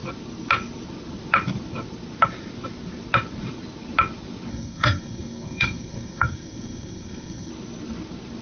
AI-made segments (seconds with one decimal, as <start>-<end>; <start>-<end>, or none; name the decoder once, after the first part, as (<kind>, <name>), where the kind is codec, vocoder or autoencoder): 4.5-7.5 (codec, SNAC)